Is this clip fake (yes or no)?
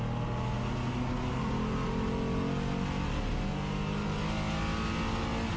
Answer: no